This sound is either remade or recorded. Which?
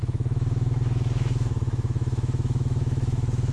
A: remade